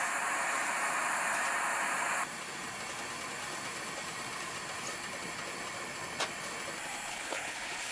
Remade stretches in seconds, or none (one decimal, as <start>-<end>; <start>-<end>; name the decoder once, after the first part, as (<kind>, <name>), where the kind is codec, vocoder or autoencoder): 7.1-7.9 (codec, HILCodec)